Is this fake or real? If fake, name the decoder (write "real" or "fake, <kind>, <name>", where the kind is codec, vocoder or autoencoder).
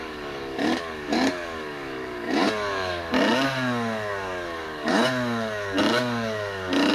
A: fake, codec, DAC